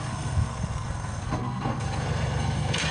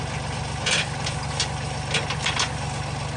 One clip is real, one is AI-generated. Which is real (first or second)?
second